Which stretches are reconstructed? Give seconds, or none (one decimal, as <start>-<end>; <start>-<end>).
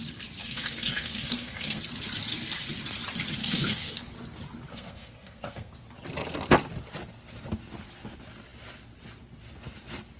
0.4-1.8; 3.4-4.1; 4.7-5.7